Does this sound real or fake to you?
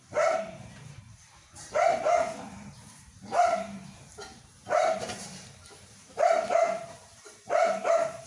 fake